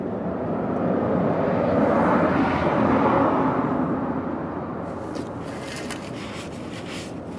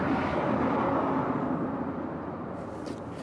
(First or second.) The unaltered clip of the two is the first